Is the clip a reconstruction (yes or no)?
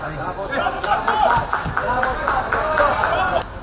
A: no